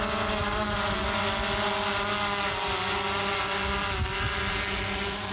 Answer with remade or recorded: recorded